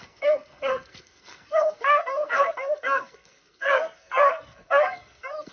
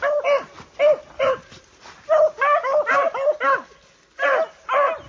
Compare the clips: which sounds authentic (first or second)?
second